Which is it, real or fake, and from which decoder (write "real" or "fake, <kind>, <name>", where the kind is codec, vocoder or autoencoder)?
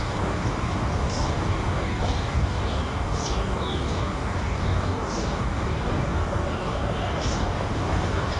fake, codec, DAC